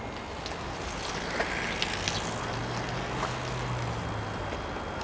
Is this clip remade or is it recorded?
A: recorded